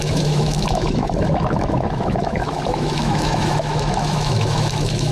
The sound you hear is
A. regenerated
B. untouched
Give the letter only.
A